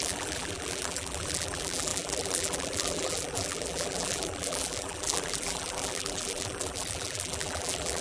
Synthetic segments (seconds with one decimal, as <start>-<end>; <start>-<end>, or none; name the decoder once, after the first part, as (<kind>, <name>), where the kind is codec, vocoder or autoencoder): 0.0-8.0 (vocoder, BigVGAN v2)